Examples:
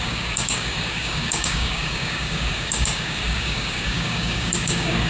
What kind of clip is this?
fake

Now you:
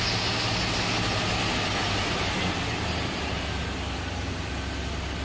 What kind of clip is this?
real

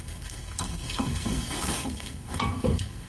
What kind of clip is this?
fake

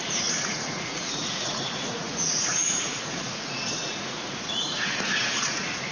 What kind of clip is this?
fake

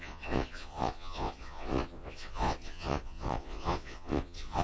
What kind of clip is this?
fake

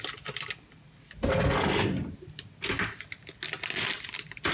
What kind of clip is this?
real